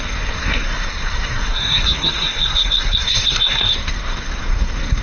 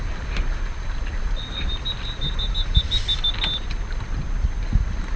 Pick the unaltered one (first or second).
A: second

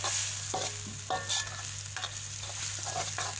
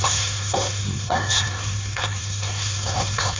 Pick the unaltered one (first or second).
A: first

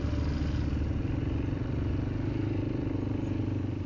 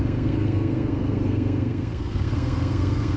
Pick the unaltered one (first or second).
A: first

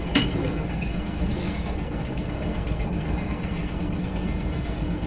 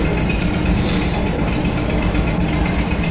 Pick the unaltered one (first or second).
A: second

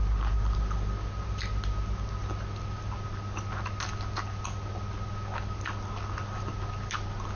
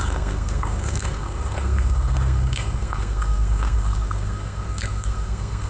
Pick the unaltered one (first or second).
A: first